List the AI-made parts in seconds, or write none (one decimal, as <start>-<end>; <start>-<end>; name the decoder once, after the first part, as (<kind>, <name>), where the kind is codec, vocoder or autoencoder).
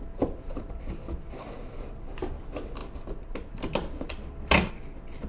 none